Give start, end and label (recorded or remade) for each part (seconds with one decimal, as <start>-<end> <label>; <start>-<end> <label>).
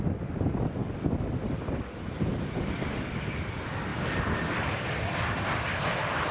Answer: 0.0-6.3 recorded